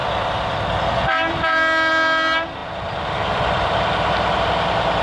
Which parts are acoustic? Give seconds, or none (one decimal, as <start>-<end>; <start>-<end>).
0.0-5.0